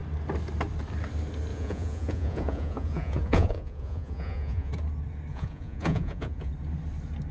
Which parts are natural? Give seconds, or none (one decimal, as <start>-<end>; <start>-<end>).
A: 0.0-1.5; 4.7-5.3; 6.5-7.3